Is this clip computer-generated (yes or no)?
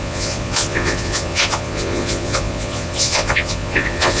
yes